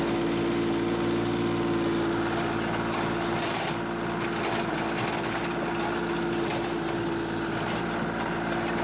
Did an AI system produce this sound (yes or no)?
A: no